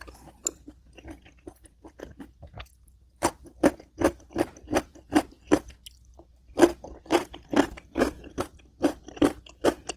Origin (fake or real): fake